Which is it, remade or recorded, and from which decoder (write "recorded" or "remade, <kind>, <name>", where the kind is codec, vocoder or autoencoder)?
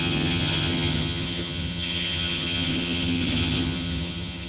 remade, vocoder, HiFi-GAN